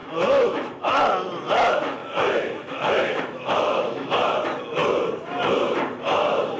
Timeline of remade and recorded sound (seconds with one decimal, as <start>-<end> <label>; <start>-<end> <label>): 0.0-1.0 remade; 1.0-2.0 recorded; 2.0-4.1 remade; 4.1-6.6 recorded